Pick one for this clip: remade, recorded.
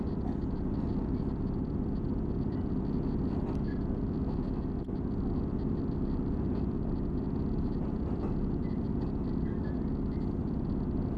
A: recorded